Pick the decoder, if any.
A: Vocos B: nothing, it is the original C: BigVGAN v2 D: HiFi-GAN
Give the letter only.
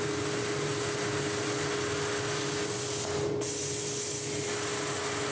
B